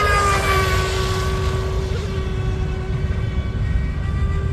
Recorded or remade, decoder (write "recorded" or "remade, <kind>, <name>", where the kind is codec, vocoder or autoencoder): recorded